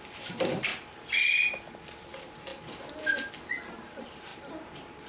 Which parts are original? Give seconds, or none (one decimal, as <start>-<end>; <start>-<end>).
0.7-2.0; 2.5-3.7